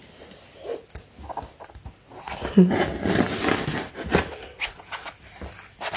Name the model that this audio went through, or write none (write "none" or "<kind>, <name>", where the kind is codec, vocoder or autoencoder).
none